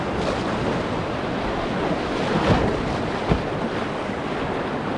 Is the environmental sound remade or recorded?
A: recorded